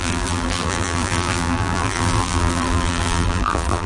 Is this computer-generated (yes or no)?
yes